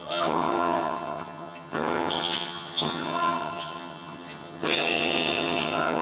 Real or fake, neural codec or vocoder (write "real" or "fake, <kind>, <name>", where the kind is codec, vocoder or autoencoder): fake, vocoder, HiFi-GAN